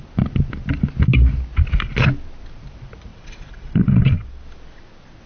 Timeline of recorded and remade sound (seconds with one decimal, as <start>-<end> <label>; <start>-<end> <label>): 0.0-3.1 recorded; 3.1-4.2 remade; 4.2-5.3 recorded